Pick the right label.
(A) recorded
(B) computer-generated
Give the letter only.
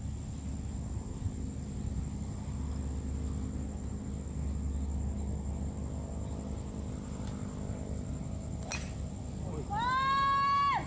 A